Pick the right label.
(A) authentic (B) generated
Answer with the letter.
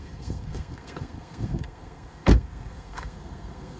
B